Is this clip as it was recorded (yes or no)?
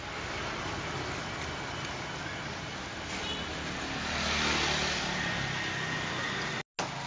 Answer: yes